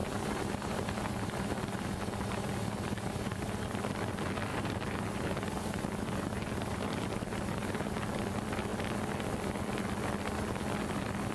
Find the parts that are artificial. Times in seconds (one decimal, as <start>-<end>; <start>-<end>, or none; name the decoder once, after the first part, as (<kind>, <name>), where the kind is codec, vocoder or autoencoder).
0.0-4.1 (vocoder, BigVGAN v2); 4.5-8.0